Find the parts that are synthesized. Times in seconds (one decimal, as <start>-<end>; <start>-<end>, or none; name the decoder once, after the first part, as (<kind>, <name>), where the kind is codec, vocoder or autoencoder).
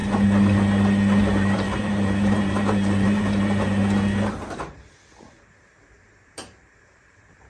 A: 1.2-3.8 (vocoder, BigVGAN v2); 5.9-7.5